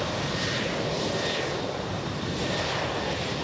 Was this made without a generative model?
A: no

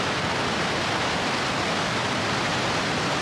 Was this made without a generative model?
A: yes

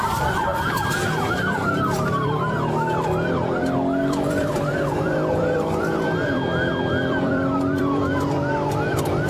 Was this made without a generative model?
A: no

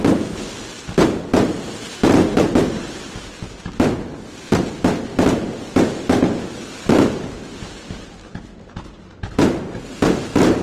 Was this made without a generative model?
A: yes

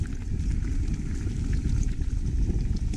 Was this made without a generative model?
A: yes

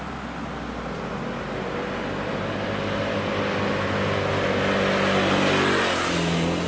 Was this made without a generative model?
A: yes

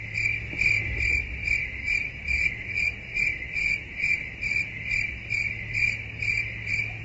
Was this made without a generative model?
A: yes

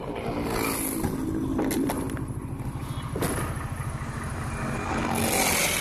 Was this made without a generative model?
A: yes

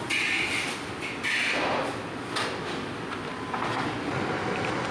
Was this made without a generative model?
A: yes